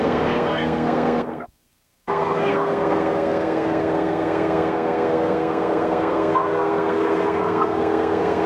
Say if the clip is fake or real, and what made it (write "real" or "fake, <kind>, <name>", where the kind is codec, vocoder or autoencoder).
fake, codec, SNAC